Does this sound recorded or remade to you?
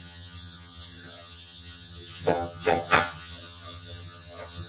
remade